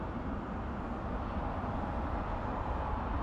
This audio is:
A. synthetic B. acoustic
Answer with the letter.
B